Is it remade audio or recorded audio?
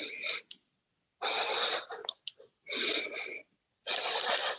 recorded